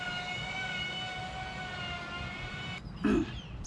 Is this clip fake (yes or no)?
no